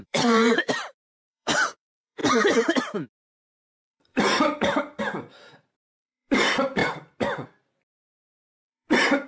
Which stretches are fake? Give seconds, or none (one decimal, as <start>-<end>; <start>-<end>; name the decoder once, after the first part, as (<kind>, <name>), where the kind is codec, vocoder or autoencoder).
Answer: 0.0-6.8 (vocoder, BigVGAN v2); 8.0-9.3